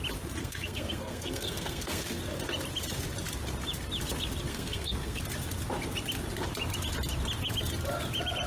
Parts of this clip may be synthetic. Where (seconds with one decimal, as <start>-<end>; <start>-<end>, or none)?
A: 0.4-2.2; 4.5-5.2